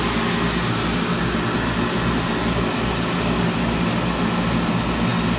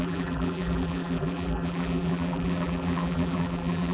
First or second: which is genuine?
first